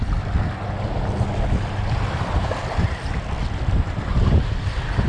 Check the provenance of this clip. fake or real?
fake